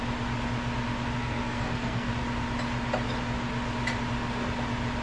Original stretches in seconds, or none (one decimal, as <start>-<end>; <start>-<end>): 0.0-1.2; 2.1-5.0